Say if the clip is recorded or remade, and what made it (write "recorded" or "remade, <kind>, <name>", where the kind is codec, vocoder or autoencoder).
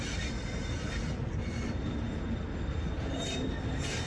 recorded